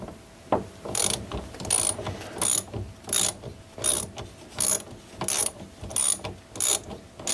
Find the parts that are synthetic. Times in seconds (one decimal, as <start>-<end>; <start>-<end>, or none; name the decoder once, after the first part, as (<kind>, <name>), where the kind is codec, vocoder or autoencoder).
0.0-1.0 (vocoder, BigVGAN v2); 5.4-5.9